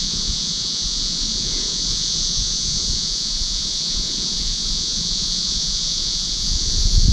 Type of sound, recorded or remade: remade